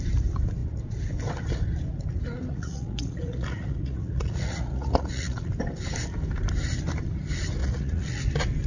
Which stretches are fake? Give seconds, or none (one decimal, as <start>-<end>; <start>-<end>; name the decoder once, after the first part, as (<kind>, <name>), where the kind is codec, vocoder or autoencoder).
2.5-5.5 (vocoder, Vocos); 7.6-8.2